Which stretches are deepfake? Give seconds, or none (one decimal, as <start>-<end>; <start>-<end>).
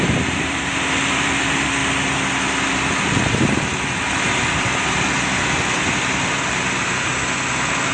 0.0-1.8; 6.5-7.1